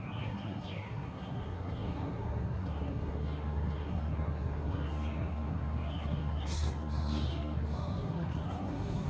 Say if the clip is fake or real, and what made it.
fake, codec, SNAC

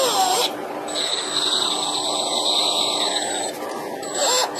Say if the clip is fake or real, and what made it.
real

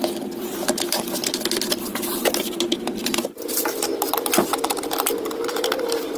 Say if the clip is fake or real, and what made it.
real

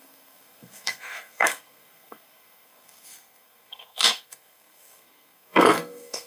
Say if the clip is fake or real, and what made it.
fake, codec, SNAC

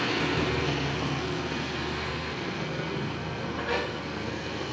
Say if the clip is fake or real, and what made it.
fake, codec, SNAC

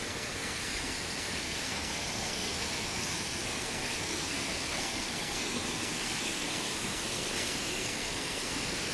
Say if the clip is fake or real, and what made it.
fake, codec, SNAC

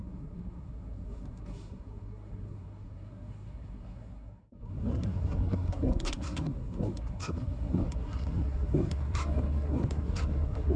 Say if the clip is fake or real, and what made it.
fake, codec, SNAC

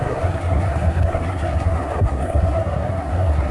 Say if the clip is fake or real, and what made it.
fake, codec, SNAC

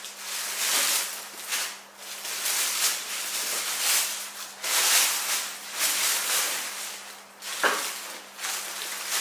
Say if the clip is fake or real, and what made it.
real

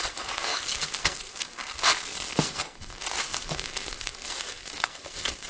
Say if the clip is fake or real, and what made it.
fake, codec, SNAC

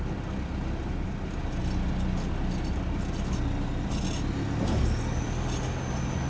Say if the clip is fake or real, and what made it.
real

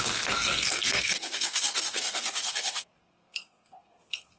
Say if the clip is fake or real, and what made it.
fake, codec, SNAC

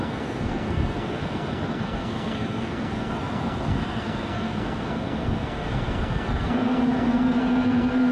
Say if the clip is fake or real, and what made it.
fake, codec, SNAC